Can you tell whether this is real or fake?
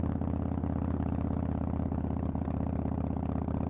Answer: real